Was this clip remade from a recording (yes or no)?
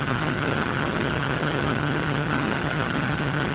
yes